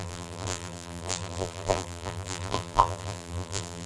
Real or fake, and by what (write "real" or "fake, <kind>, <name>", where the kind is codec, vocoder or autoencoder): fake, vocoder, BigVGAN v2